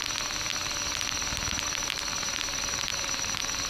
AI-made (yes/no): yes